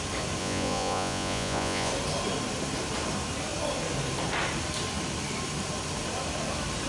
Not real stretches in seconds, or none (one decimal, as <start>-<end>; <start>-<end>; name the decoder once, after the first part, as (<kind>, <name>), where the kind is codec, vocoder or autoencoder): 0.4-1.9 (vocoder, Vocos)